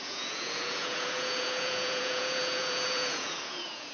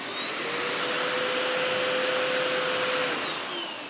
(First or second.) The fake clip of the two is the first